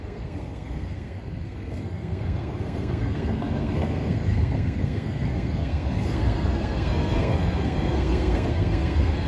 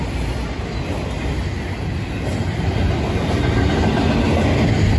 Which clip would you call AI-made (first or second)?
first